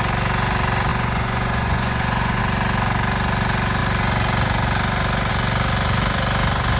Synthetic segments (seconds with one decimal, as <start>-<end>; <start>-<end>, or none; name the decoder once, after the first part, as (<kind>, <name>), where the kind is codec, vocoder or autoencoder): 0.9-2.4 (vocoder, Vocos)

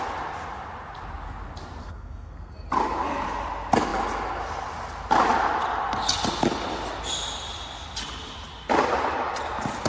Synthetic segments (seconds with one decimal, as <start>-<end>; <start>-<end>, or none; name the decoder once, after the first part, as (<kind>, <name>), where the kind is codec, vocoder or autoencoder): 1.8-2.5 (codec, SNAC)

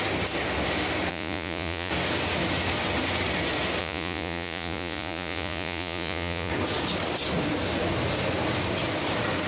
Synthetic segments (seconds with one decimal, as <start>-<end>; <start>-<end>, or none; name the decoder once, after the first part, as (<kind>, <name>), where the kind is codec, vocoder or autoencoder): 1.1-1.9 (vocoder, Vocos); 3.8-6.5

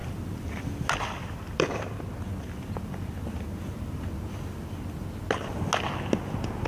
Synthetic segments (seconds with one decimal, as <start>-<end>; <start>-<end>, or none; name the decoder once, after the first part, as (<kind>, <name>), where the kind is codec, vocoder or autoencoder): none